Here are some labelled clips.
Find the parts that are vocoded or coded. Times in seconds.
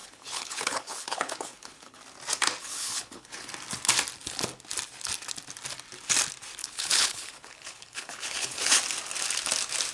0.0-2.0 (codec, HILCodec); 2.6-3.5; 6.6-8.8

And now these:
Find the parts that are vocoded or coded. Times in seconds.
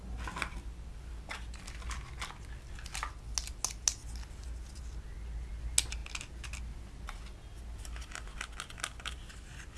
none